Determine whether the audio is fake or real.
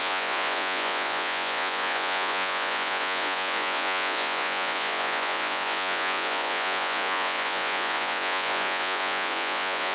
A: fake